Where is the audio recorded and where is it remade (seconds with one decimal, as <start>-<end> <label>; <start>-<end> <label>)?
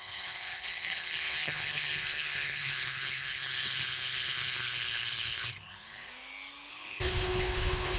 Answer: 0.0-6.1 remade; 6.1-6.7 recorded; 6.7-8.0 remade